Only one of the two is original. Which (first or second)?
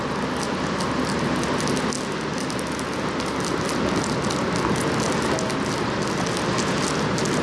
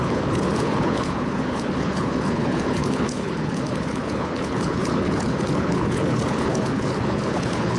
first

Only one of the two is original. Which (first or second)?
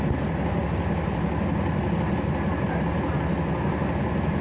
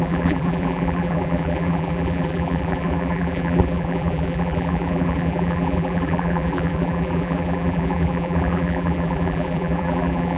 first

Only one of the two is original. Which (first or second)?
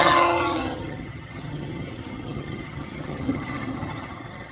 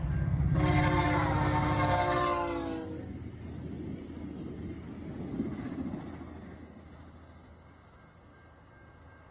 second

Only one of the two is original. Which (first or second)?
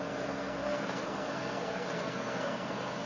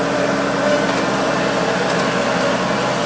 second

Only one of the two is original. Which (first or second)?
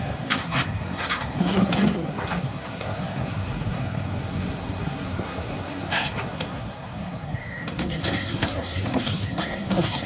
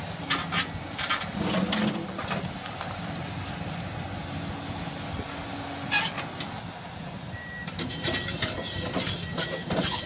second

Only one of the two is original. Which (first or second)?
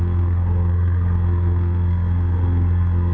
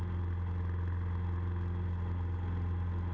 second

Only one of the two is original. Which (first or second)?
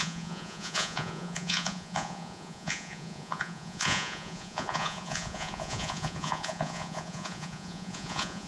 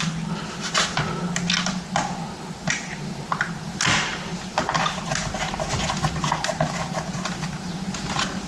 second